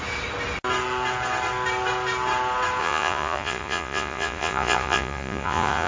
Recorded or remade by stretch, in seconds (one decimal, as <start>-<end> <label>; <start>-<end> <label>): 0.0-2.8 recorded; 2.8-5.9 remade